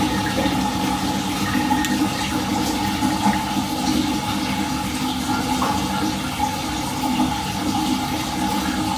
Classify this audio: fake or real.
real